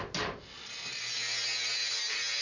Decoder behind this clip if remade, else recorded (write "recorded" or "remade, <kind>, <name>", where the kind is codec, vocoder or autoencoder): recorded